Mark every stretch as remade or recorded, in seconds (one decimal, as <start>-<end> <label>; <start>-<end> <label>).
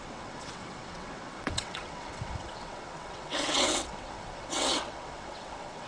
0.0-5.9 remade